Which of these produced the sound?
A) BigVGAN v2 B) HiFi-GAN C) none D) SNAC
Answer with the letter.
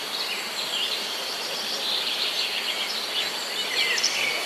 C